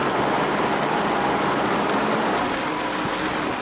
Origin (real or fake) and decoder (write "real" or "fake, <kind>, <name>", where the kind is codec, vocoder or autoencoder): real